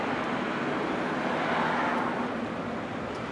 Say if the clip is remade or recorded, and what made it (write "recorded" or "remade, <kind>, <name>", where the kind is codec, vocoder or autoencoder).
recorded